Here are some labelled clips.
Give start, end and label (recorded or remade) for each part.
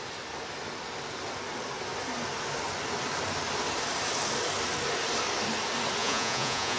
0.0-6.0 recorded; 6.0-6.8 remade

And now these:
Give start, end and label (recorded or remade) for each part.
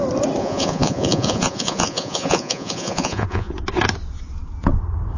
0.0-0.4 recorded; 0.4-3.5 remade; 3.5-5.2 recorded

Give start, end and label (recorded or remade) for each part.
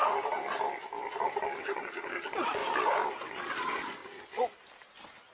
0.0-1.6 recorded; 1.6-2.6 remade; 2.6-3.4 recorded; 3.4-4.0 remade; 4.0-5.3 recorded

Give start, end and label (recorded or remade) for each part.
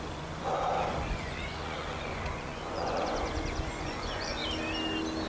0.0-4.4 remade; 4.4-5.3 recorded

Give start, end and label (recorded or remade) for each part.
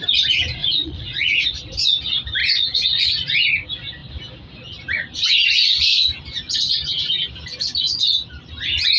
0.0-0.6 recorded; 0.6-1.7 remade; 1.7-2.4 recorded; 2.4-3.1 remade; 3.1-9.0 recorded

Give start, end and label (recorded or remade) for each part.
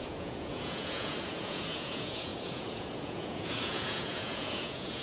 0.0-5.0 remade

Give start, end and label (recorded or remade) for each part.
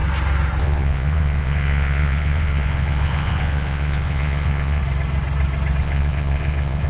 0.0-0.6 recorded; 0.6-4.8 remade; 4.8-5.8 recorded; 5.8-6.9 remade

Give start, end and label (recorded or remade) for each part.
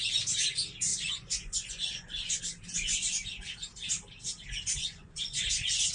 0.0-0.9 recorded; 0.9-2.4 remade; 2.4-4.8 recorded; 4.8-5.5 remade; 5.5-5.9 recorded